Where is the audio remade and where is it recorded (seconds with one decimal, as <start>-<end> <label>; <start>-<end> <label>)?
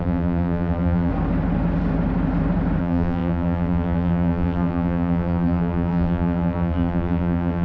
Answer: 0.0-1.1 remade; 1.1-2.8 recorded; 2.8-7.6 remade